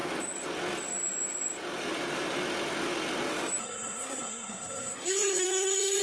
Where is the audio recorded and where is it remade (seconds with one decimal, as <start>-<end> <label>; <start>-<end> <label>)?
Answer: 0.0-3.6 recorded; 3.6-6.0 remade